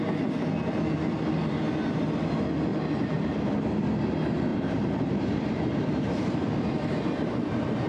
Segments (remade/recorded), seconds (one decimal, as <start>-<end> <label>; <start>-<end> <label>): 0.0-2.7 recorded; 2.7-3.5 remade; 3.5-4.5 recorded; 4.5-7.9 remade